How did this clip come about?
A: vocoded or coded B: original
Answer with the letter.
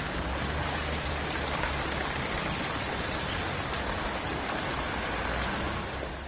B